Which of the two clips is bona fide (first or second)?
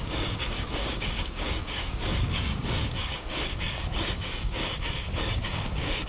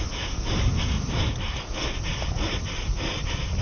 second